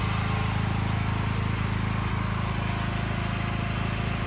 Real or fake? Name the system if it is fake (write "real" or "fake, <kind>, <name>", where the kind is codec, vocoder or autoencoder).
real